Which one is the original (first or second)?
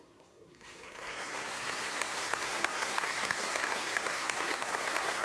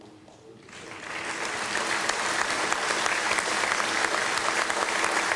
second